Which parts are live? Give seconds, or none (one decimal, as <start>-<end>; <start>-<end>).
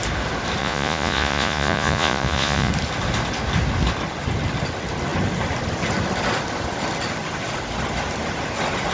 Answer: 0.0-0.6; 2.7-8.9